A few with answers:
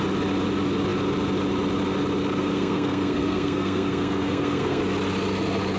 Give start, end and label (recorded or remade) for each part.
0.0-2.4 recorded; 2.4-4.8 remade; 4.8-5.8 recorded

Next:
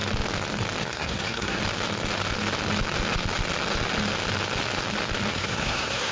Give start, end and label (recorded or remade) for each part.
0.0-0.8 recorded; 0.8-1.6 remade; 1.6-5.3 recorded; 5.3-6.1 remade

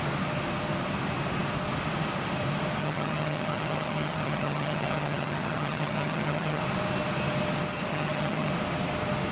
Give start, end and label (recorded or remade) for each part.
0.0-2.8 recorded; 2.8-6.6 remade; 6.6-7.9 recorded; 7.9-8.5 remade; 8.5-9.3 recorded

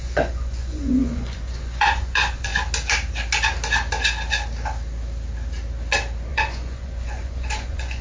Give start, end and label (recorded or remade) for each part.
0.0-2.5 remade; 2.5-6.3 recorded; 6.3-8.0 remade

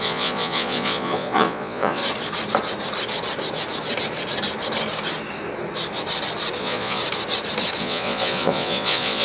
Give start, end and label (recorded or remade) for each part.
0.0-2.0 remade; 2.0-6.6 recorded; 6.6-7.0 remade; 7.0-7.8 recorded; 7.8-9.2 remade

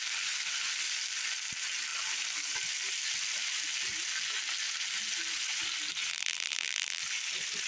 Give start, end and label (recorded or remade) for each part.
0.0-6.1 recorded; 6.1-7.0 remade; 7.0-7.7 recorded

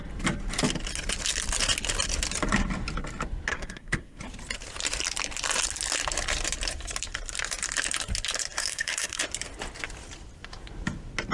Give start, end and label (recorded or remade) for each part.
0.0-3.5 recorded; 3.5-4.2 remade; 4.2-8.6 recorded; 8.6-9.2 remade; 9.2-11.3 recorded

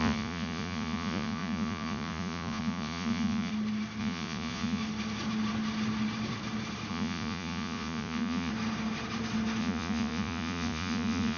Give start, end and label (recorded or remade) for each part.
0.0-3.5 remade; 3.5-4.0 recorded; 4.0-4.8 remade; 4.8-6.9 recorded; 6.9-8.5 remade; 8.5-9.6 recorded; 9.6-11.4 remade